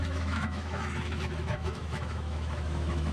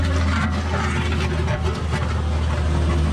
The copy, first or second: first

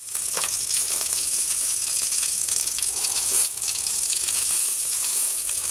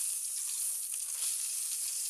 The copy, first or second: first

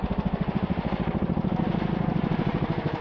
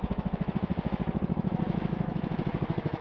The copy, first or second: second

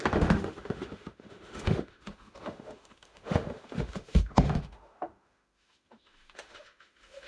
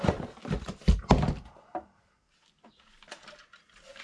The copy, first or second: first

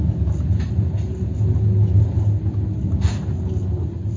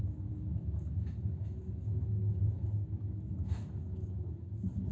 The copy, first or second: second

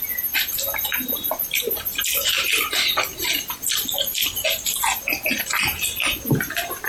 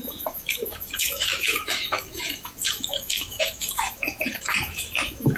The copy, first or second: second